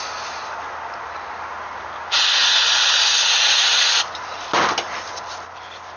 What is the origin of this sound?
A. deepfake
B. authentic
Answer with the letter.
B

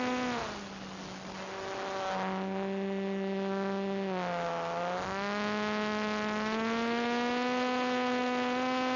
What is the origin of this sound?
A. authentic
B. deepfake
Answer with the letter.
A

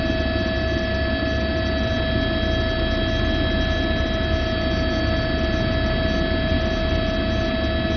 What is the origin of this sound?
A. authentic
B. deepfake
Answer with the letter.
A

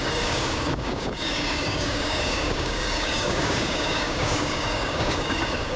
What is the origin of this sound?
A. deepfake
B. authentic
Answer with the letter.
A